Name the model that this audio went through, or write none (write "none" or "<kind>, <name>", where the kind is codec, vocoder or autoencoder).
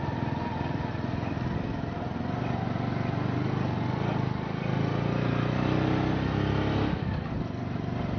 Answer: none